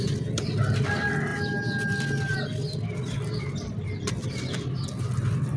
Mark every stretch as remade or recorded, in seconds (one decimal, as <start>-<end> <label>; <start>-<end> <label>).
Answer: 0.0-5.6 recorded